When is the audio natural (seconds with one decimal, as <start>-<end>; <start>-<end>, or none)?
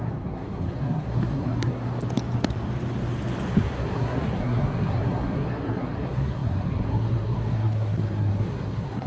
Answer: 1.8-3.5